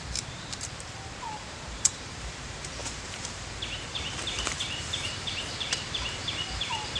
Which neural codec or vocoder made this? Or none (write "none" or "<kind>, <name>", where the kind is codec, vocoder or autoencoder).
vocoder, BigVGAN v2